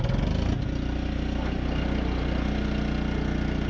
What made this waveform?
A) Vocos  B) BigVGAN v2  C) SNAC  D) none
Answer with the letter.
D